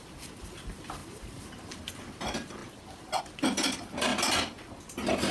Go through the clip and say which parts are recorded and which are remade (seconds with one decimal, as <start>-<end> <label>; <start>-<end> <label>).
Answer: 0.0-1.0 recorded; 1.0-1.9 remade; 1.9-5.3 recorded